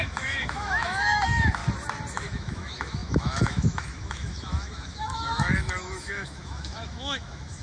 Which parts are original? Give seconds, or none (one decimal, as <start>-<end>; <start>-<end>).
1.6-2.1